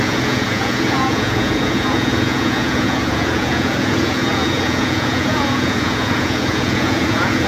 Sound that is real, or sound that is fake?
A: fake